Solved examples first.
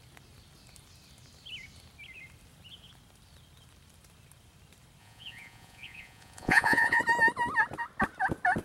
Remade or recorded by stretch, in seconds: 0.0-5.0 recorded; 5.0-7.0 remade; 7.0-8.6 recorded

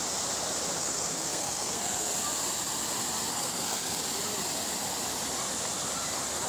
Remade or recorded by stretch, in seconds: 0.0-0.8 recorded; 0.8-2.1 remade; 2.1-3.3 recorded; 3.3-4.0 remade; 4.0-6.5 recorded

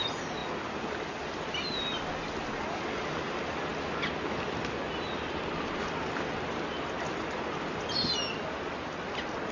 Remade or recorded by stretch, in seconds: 0.0-9.5 recorded

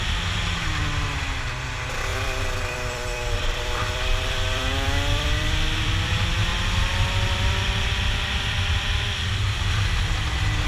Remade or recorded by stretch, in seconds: 0.0-2.1 recorded; 2.1-6.1 remade; 6.1-6.5 recorded; 6.5-9.7 remade; 9.7-10.7 recorded

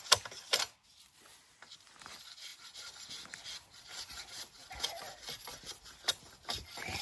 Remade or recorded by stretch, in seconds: 0.0-7.0 recorded

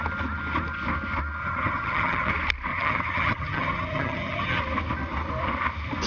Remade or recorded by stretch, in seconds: 0.0-1.4 recorded; 1.4-2.3 remade; 2.3-2.7 recorded; 2.7-4.6 remade; 4.6-6.1 recorded

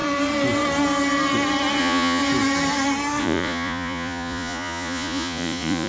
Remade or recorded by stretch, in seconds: 0.0-1.8 recorded; 1.8-2.2 remade; 2.2-3.2 recorded; 3.2-5.9 remade